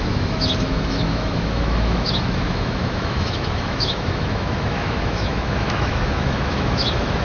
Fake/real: fake